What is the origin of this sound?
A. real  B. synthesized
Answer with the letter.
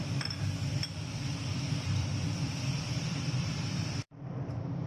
B